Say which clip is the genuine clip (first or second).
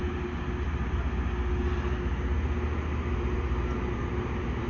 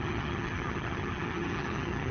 first